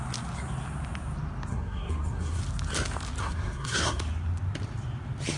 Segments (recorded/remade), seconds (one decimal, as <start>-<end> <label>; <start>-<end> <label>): 0.0-1.5 recorded; 1.5-2.4 remade; 2.4-3.2 recorded; 3.2-4.0 remade; 4.0-5.4 recorded